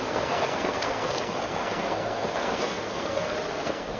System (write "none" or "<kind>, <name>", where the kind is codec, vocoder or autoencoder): codec, SNAC